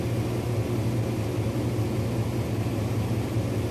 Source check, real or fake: real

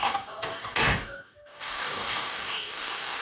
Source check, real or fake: fake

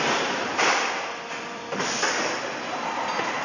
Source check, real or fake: fake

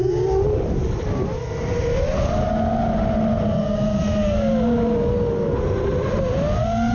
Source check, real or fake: real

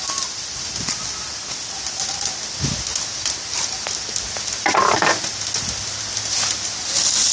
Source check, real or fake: real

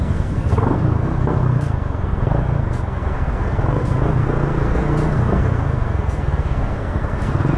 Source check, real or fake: fake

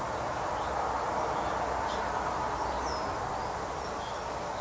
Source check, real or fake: real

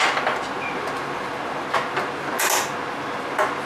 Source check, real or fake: real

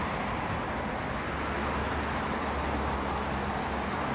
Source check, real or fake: real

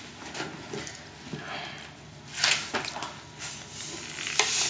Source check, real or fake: real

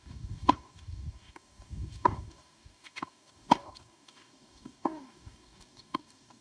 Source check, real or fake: fake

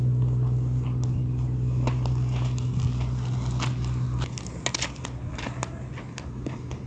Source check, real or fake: real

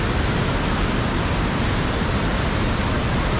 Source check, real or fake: real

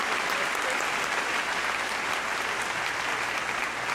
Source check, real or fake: real